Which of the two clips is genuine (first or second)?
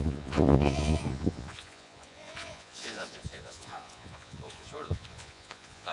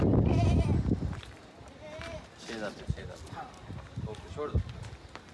second